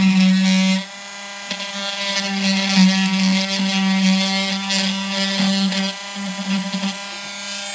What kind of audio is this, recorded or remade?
recorded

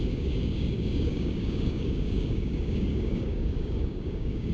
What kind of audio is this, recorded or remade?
remade